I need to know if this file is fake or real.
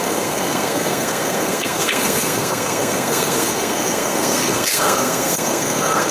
fake